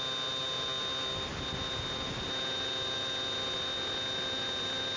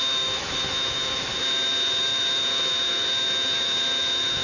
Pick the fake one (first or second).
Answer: second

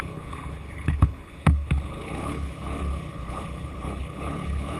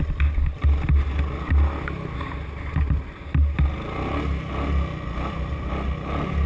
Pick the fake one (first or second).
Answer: first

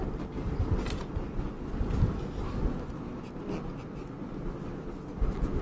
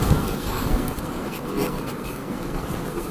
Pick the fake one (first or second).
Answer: second